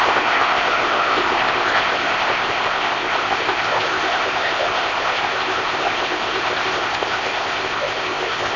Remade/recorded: remade